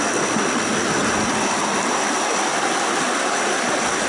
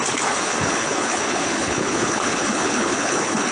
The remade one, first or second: second